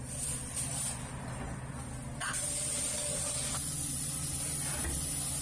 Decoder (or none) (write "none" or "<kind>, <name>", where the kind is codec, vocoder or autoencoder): none